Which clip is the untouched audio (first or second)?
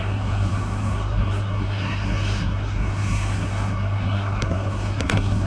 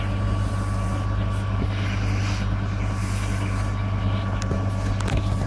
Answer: second